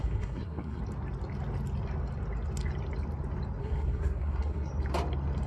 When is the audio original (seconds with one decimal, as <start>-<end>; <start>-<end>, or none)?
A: 0.8-3.6; 4.7-5.5

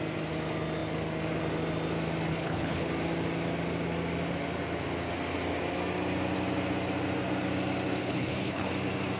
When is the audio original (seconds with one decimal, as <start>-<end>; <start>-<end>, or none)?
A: 0.0-2.3; 2.9-8.0; 8.7-9.2

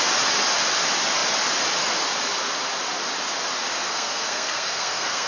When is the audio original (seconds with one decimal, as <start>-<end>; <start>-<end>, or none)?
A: 0.0-3.7

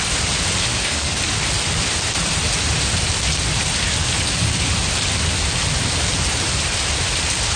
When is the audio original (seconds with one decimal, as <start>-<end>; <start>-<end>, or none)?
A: 0.0-0.7; 1.4-4.0; 4.7-7.6